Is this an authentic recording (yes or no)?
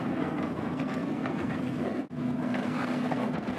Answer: no